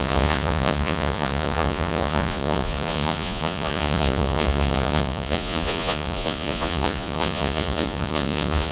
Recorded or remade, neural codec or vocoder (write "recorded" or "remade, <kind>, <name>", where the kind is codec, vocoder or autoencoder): remade, vocoder, Vocos